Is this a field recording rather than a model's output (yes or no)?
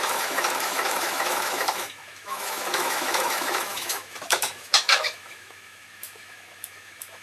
no